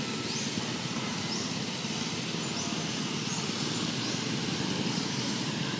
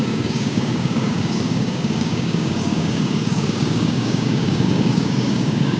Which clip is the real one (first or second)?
first